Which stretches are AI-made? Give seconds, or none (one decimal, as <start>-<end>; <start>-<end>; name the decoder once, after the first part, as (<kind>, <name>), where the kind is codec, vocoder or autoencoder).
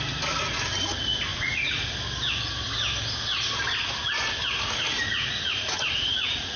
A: 1.3-1.9 (vocoder, Vocos); 5.0-6.6